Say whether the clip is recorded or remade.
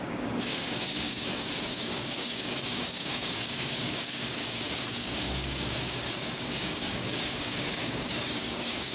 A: remade